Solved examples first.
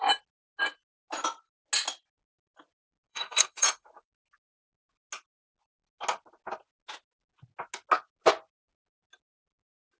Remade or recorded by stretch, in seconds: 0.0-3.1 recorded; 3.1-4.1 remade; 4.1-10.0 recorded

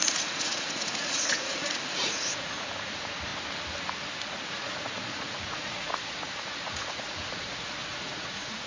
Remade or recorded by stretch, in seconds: 0.0-3.3 remade; 3.3-4.3 recorded; 4.3-8.7 remade

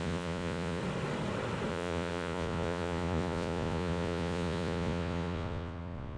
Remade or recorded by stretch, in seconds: 0.0-0.8 remade; 0.8-1.7 recorded; 1.7-6.2 remade